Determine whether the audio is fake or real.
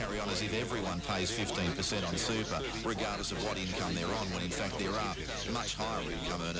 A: real